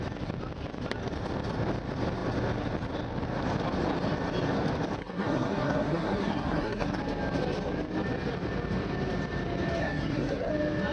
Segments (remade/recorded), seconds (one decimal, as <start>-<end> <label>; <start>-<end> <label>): 0.0-5.0 recorded; 5.0-7.0 remade; 7.0-9.8 recorded; 9.8-10.5 remade; 10.5-10.9 recorded